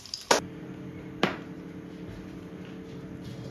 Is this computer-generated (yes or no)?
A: no